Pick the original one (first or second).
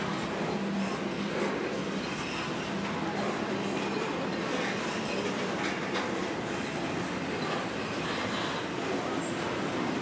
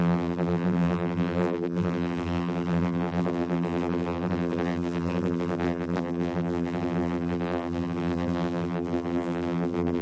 first